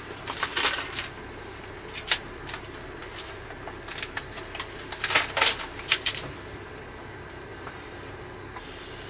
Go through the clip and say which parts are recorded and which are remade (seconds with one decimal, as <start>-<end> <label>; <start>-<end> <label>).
0.0-7.5 recorded; 7.5-8.1 remade; 8.1-9.1 recorded

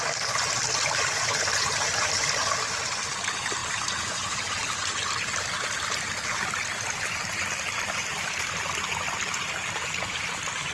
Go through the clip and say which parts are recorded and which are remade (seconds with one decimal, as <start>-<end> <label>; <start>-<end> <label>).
0.0-3.6 recorded; 3.6-5.3 remade; 5.3-8.0 recorded; 8.0-8.6 remade; 8.6-10.7 recorded

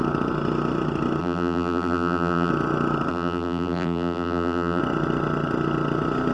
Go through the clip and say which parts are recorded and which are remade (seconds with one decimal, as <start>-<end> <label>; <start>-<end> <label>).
0.0-1.2 recorded; 1.2-2.5 remade; 2.5-3.1 recorded; 3.1-4.8 remade; 4.8-6.3 recorded

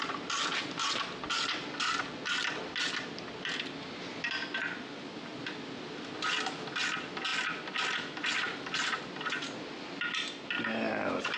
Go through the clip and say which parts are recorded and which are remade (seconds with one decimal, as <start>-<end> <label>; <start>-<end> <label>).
0.0-11.4 recorded

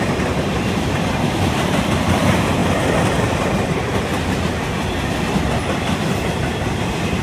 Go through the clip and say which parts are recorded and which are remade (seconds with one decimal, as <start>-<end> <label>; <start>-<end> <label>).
0.0-2.6 remade; 2.6-6.8 recorded; 6.8-7.2 remade

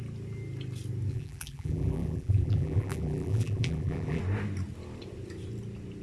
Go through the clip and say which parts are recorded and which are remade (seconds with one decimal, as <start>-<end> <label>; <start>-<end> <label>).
0.0-1.1 recorded; 1.1-4.2 remade; 4.2-6.0 recorded

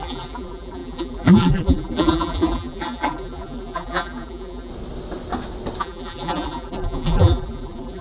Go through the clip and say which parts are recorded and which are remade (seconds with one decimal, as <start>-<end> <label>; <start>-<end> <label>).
0.0-4.7 remade; 4.7-5.8 recorded; 5.8-8.0 remade